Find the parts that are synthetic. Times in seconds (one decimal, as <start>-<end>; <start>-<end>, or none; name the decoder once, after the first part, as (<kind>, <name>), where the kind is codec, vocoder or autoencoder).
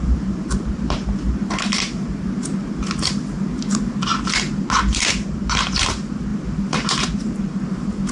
0.0-4.1 (vocoder, BigVGAN v2); 4.9-8.1